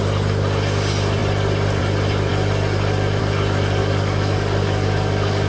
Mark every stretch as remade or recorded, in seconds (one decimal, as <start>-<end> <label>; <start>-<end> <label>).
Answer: 0.0-3.8 recorded; 3.8-5.5 remade